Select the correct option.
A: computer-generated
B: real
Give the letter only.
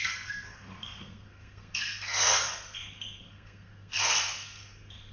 A